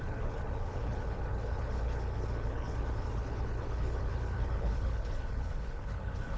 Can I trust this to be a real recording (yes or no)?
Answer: no